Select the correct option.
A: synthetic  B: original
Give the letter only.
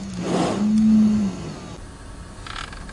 B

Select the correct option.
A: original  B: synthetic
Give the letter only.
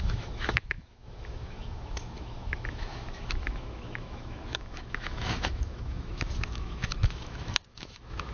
B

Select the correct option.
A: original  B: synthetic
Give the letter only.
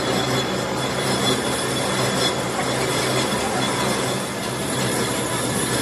A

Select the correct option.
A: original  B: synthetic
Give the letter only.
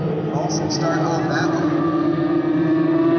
A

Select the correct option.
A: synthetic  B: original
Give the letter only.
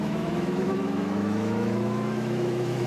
A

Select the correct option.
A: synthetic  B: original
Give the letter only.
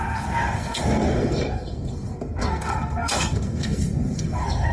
A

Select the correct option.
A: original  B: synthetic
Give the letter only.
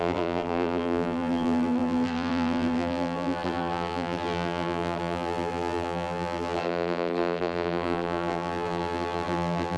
B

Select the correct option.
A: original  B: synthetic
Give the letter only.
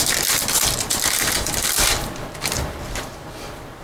B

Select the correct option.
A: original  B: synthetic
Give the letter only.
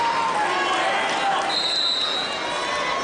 A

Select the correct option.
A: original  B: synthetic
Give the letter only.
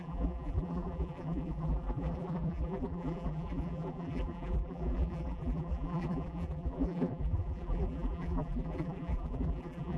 B